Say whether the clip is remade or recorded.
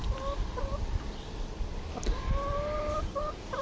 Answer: recorded